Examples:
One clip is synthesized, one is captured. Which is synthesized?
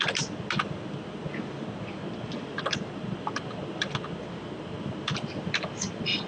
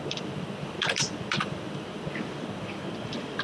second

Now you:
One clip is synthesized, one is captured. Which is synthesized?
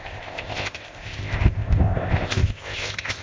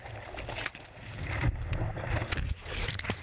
first